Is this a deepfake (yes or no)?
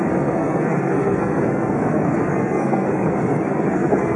yes